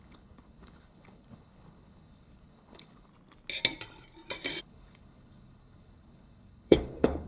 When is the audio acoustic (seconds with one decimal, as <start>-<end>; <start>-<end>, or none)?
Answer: 3.1-4.6